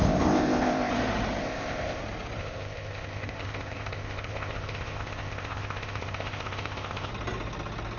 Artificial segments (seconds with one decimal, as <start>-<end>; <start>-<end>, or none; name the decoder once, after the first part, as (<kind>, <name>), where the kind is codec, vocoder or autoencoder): 0.0-0.9 (codec, ZipCodec); 1.4-2.0; 2.4-7.1